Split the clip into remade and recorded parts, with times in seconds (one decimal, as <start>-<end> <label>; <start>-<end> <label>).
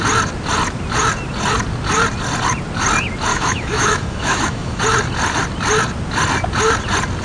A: 0.0-3.3 recorded; 3.3-4.8 remade; 4.8-7.2 recorded